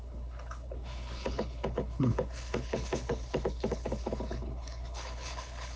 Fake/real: fake